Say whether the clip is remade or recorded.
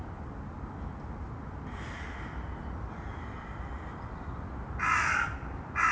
recorded